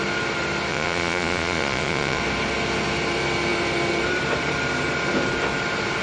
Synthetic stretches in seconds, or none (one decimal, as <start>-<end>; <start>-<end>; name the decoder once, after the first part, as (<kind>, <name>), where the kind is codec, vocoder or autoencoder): 0.7-2.2 (vocoder, Vocos)